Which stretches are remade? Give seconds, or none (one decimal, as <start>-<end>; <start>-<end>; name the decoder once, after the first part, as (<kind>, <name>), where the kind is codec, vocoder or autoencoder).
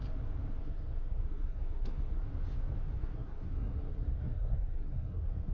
0.6-2.2 (codec, SNAC); 3.0-5.5